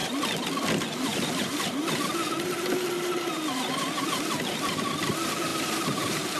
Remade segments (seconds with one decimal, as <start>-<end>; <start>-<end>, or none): none